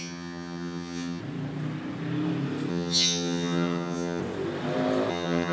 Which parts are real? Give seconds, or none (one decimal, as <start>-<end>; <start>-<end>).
1.2-2.7; 4.2-5.1